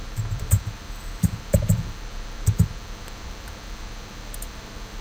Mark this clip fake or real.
fake